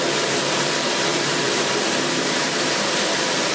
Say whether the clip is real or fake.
fake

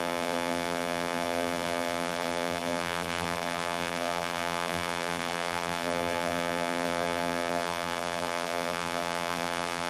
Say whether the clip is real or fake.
fake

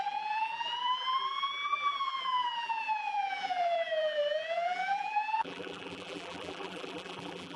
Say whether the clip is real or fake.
fake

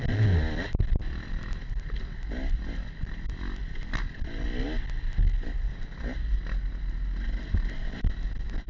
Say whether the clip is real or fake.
real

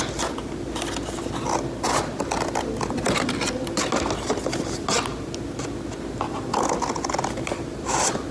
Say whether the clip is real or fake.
real